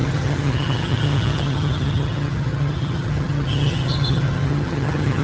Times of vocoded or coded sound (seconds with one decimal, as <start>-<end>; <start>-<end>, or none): 0.0-5.2